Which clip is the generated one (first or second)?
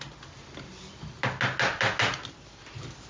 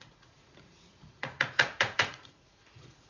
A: second